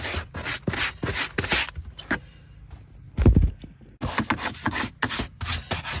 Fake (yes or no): no